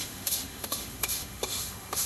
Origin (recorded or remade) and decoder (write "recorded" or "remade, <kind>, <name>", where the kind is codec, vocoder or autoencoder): remade, autoencoder, DAC-VAE